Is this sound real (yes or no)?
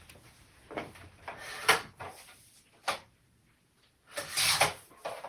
yes